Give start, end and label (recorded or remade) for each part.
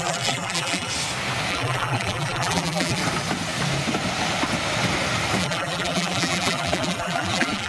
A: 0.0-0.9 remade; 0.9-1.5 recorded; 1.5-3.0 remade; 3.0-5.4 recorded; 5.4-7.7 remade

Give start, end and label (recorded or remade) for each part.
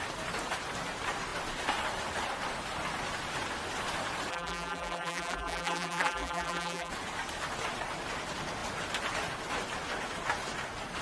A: 0.0-4.3 recorded; 4.3-6.9 remade; 6.9-11.0 recorded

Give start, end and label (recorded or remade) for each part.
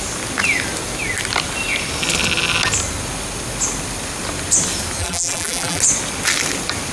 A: 0.0-5.0 recorded; 5.0-5.8 remade; 5.8-6.9 recorded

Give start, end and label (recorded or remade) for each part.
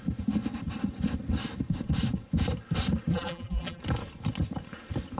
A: 0.0-3.1 recorded; 3.1-3.8 remade; 3.8-5.2 recorded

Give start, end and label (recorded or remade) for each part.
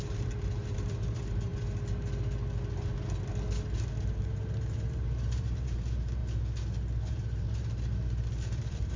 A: 0.0-1.5 remade; 1.5-4.1 recorded; 4.1-6.2 remade; 6.2-7.1 recorded; 7.1-9.0 remade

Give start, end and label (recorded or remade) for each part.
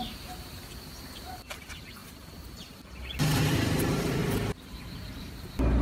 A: 0.0-2.0 remade; 2.0-3.4 recorded; 3.4-4.2 remade; 4.2-4.8 recorded; 4.8-5.8 remade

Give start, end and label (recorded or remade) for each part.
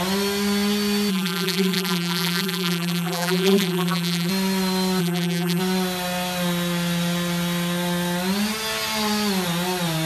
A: 0.0-1.1 recorded; 1.1-4.3 remade; 4.3-5.0 recorded; 5.0-5.6 remade; 5.6-10.1 recorded